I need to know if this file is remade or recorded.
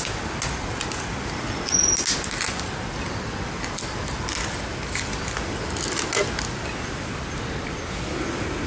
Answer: recorded